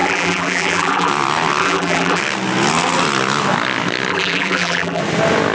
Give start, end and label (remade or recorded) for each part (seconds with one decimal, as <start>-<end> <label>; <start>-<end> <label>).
0.0-1.1 remade; 1.1-1.6 recorded; 1.6-2.2 remade; 2.2-4.1 recorded; 4.1-5.0 remade; 5.0-5.5 recorded